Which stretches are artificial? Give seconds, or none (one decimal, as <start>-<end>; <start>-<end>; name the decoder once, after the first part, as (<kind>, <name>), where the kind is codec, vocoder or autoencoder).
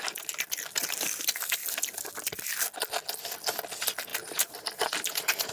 4.1-5.5 (vocoder, BigVGAN v2)